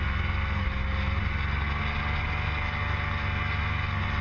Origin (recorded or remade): recorded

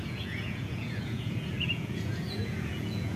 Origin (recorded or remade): remade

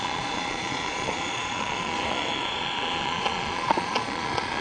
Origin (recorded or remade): remade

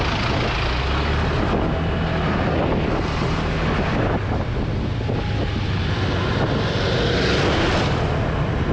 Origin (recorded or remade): recorded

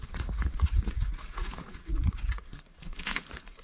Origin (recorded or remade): remade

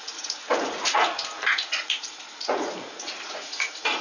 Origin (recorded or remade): remade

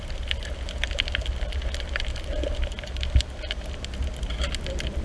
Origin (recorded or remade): recorded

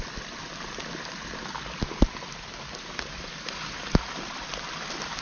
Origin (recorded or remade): recorded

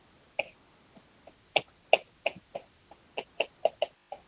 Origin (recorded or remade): recorded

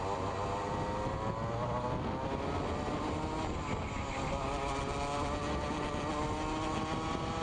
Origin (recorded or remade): recorded